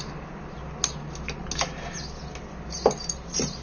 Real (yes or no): yes